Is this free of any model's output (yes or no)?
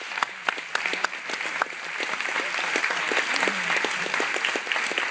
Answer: yes